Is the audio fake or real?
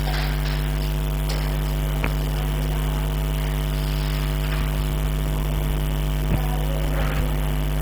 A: real